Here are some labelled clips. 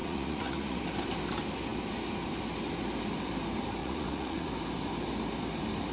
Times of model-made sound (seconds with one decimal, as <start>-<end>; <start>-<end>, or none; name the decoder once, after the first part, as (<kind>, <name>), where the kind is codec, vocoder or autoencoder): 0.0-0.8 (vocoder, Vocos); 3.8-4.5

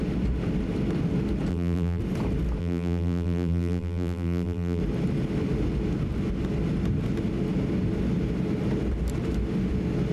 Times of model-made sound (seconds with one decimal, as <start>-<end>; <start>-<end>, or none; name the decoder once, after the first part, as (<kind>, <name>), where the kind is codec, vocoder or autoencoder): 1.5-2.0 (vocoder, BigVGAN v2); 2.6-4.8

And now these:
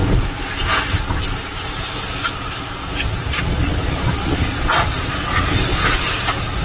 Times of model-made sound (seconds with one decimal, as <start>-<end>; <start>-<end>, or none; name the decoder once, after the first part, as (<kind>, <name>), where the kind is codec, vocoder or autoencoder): 3.2-5.5 (vocoder, Vocos)

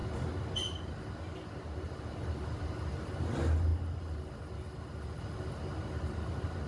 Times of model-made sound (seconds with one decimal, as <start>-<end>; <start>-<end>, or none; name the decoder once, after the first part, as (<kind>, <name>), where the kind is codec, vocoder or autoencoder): none

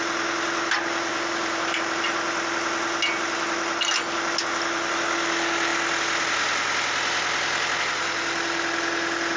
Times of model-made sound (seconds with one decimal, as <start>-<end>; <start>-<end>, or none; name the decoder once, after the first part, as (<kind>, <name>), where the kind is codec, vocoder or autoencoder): 1.1-2.0 (vocoder, BigVGAN v2)

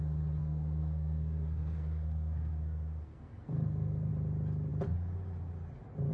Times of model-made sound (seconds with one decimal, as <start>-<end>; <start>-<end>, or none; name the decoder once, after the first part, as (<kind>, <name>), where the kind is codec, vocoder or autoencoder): 0.4-4.1 (codec, SNAC)